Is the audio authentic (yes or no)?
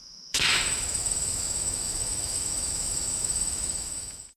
no